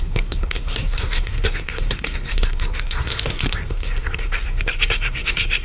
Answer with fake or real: fake